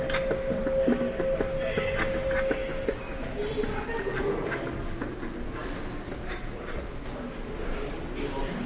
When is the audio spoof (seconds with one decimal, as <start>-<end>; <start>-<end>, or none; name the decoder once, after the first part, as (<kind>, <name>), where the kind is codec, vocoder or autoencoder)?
none